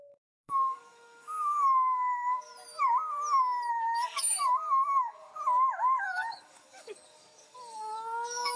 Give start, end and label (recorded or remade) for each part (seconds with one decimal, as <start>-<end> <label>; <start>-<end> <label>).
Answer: 0.0-2.5 remade; 2.5-3.7 recorded; 3.7-5.3 remade; 5.3-6.0 recorded; 6.0-8.6 remade